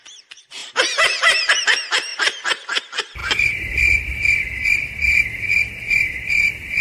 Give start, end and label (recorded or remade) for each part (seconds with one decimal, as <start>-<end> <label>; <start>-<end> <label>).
0.0-0.6 recorded; 0.6-1.6 remade; 1.6-2.1 recorded; 2.1-2.8 remade; 2.8-3.2 recorded; 3.2-4.9 remade; 4.9-6.8 recorded